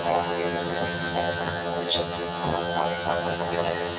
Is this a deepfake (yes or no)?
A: yes